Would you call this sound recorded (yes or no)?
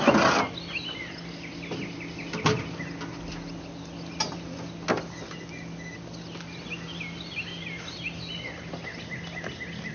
yes